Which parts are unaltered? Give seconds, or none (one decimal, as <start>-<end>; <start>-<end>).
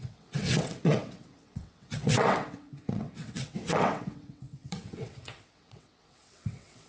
none